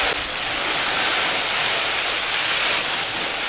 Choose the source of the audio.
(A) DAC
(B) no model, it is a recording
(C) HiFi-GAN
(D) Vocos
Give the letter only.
B